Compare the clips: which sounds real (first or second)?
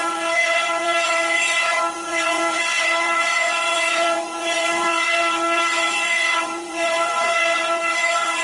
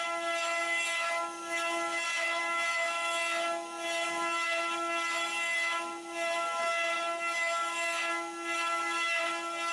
second